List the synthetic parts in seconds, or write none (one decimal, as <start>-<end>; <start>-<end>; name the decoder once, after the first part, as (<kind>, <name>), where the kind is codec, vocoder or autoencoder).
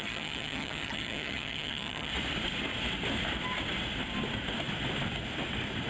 0.0-2.1 (vocoder, HiFi-GAN)